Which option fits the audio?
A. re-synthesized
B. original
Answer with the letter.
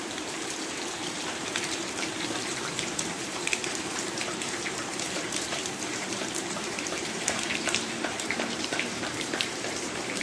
A